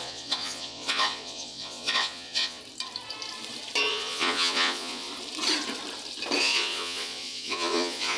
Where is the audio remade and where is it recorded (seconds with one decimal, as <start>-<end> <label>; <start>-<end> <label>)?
0.0-2.6 remade; 2.6-3.9 recorded; 3.9-5.1 remade; 5.1-6.4 recorded; 6.4-8.2 remade